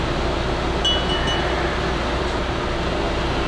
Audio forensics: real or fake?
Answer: real